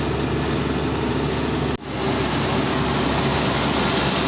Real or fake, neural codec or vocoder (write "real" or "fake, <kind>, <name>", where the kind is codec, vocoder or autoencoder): real